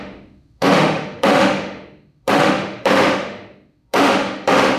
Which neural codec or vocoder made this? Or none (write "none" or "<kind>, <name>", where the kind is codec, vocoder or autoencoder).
autoencoder, DAC-VAE